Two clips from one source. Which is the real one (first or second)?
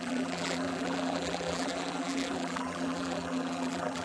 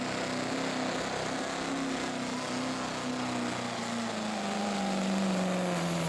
second